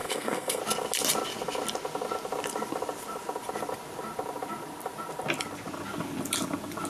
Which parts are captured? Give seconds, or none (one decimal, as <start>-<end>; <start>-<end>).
0.6-6.9